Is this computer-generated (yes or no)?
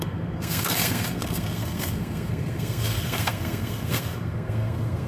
yes